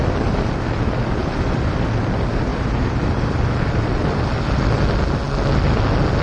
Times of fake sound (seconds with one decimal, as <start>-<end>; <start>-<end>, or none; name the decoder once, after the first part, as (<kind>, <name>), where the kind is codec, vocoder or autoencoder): 1.2-1.7 (vocoder, BigVGAN v2); 2.5-4.8